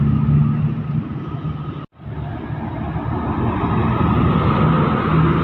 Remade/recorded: recorded